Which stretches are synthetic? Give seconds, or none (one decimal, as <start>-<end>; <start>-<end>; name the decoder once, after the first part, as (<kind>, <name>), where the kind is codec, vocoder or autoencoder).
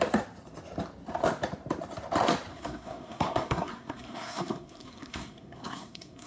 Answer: 2.5-6.3 (codec, SNAC)